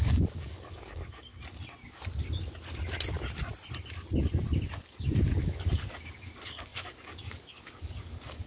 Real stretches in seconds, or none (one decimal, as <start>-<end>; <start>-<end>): 1.3-5.4